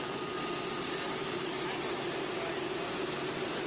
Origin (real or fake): real